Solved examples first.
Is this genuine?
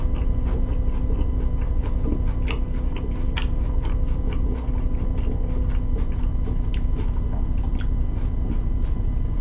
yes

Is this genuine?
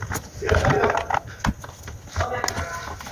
yes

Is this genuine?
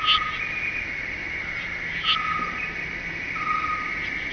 yes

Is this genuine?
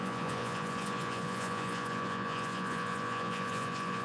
no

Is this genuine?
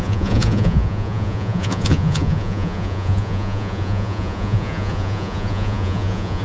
no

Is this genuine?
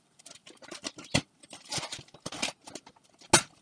yes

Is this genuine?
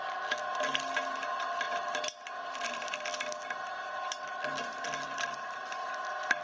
yes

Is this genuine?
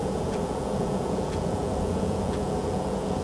no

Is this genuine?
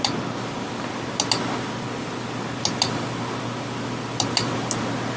yes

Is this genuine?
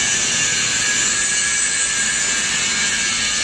yes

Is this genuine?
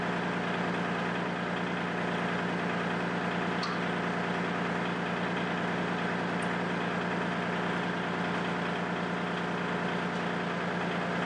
yes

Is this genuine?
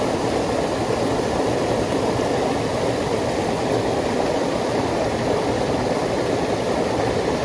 yes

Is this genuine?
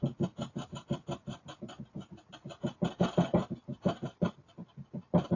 yes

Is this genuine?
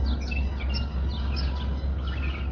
yes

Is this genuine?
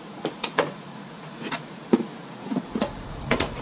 no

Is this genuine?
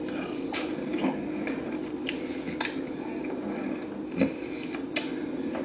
yes